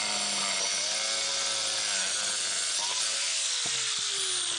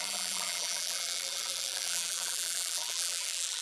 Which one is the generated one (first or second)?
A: second